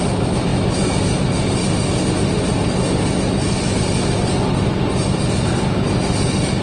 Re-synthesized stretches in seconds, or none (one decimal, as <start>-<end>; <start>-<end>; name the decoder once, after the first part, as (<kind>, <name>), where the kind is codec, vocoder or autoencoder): none